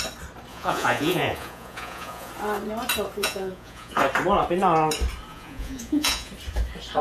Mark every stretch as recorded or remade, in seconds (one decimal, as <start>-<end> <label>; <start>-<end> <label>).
0.0-0.5 recorded; 0.5-2.3 remade; 2.3-3.2 recorded; 3.2-4.0 remade; 4.0-5.3 recorded; 5.3-6.3 remade; 6.3-7.0 recorded